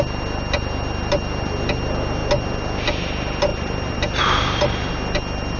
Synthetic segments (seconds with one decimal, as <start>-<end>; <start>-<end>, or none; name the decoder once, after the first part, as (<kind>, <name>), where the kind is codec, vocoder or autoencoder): 3.5-4.9 (vocoder, BigVGAN v2)